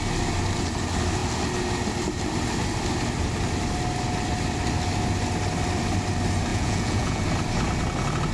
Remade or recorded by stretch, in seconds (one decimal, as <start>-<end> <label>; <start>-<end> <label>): 0.0-6.5 recorded; 6.5-7.2 remade; 7.2-8.3 recorded